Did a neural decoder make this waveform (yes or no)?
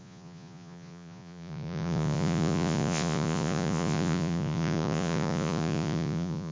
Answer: yes